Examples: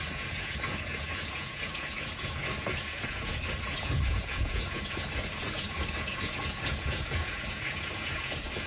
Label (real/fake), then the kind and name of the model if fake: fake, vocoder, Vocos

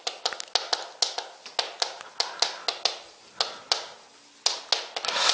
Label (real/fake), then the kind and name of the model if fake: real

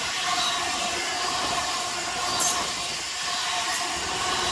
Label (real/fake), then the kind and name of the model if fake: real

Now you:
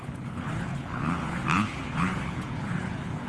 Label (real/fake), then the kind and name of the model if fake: fake, codec, HILCodec